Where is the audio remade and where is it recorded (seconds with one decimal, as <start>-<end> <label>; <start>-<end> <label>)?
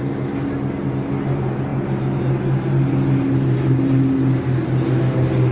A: 0.0-5.5 recorded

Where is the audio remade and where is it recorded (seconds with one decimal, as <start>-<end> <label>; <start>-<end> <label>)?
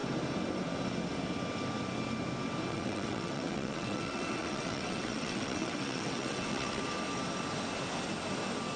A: 0.0-2.7 recorded; 2.7-6.8 remade; 6.8-8.8 recorded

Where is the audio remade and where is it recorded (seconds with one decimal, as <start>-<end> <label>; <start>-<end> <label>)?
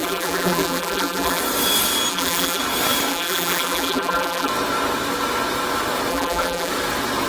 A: 0.0-1.4 remade; 1.4-2.1 recorded; 2.1-2.6 remade; 2.6-3.1 recorded; 3.1-4.5 remade; 4.5-6.1 recorded; 6.1-6.7 remade; 6.7-7.3 recorded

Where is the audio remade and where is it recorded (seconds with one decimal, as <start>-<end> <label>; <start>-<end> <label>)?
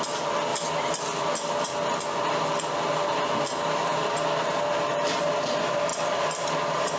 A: 0.0-7.0 recorded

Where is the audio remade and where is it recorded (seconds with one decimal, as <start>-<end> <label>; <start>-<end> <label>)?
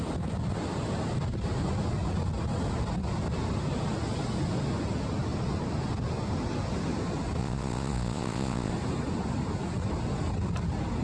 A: 0.0-7.4 recorded; 7.4-8.7 remade; 8.7-11.0 recorded